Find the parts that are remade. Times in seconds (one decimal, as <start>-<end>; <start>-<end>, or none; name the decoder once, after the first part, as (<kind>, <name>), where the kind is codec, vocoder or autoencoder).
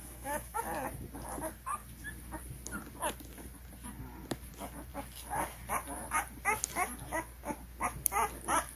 0.0-0.6 (autoencoder, DAC-VAE)